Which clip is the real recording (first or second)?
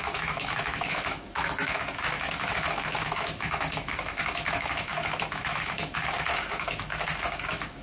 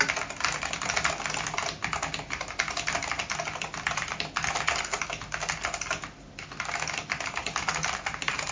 second